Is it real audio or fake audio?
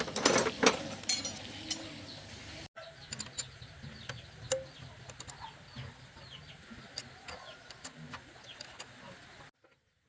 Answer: real